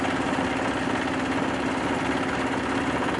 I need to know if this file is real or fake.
real